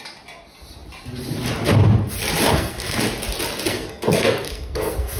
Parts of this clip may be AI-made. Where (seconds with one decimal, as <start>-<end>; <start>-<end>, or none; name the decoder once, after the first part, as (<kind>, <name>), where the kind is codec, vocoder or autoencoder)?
2.5-3.0 (codec, SNAC); 3.7-5.2